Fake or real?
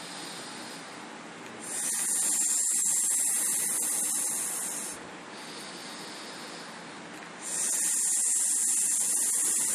real